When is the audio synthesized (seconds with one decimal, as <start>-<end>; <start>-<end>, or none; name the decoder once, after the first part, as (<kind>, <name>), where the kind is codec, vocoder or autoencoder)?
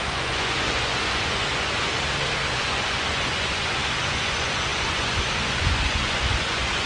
0.0-1.9 (vocoder, Vocos); 2.5-6.9